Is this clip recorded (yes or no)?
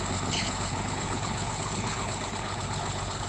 no